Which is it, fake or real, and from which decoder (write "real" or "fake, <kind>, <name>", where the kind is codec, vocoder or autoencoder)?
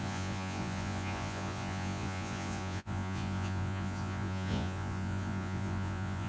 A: fake, vocoder, Vocos